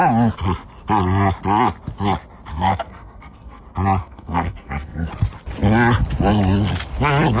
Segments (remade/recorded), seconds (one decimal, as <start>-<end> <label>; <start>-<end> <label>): 0.0-2.5 recorded; 2.5-3.6 remade; 3.6-4.0 recorded; 4.0-5.1 remade; 5.1-7.4 recorded